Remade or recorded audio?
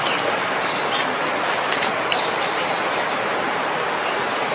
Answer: recorded